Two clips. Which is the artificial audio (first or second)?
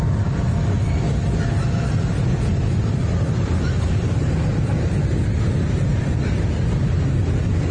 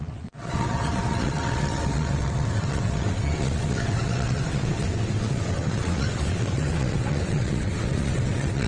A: second